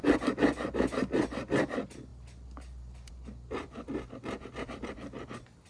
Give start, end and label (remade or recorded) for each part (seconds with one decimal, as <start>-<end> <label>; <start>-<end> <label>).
0.0-5.7 recorded